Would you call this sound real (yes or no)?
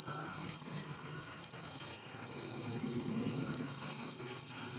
no